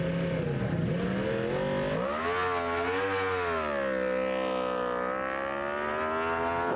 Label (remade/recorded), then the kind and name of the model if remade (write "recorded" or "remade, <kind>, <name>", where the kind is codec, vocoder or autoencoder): recorded